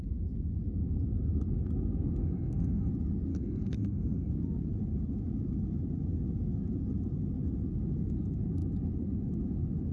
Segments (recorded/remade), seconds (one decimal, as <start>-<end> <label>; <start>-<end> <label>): 0.0-2.2 recorded; 2.2-2.9 remade; 2.9-3.3 recorded; 3.3-4.3 remade; 4.3-9.9 recorded